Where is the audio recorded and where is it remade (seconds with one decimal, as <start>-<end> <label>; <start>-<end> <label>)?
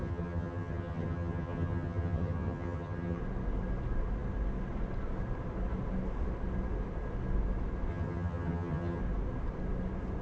0.0-3.2 remade; 3.2-7.9 recorded; 7.9-9.0 remade; 9.0-10.2 recorded